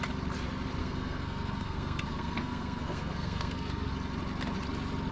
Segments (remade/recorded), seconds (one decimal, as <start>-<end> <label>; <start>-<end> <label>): 0.0-0.8 recorded; 0.8-3.9 remade; 3.9-5.1 recorded